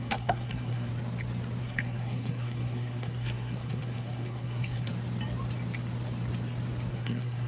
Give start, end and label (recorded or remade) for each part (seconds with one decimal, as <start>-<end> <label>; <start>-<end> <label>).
0.0-0.9 remade; 0.9-1.6 recorded; 1.6-4.9 remade; 4.9-6.9 recorded; 6.9-7.5 remade